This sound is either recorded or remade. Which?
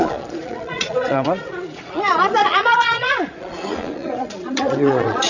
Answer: remade